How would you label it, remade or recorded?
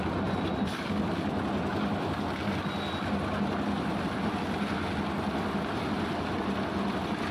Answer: recorded